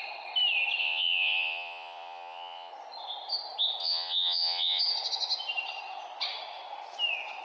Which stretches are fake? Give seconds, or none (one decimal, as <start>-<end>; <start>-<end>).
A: 0.8-2.7; 3.8-4.8